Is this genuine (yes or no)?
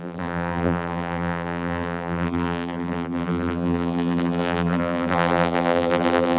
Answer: no